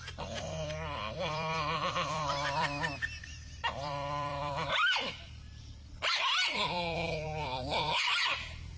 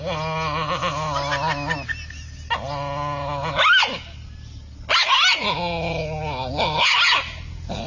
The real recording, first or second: second